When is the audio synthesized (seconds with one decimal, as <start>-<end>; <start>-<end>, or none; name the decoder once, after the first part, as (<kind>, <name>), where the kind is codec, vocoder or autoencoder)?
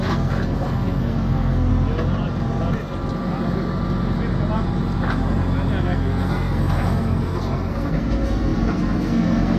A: 0.0-1.7 (codec, SNAC); 5.8-9.6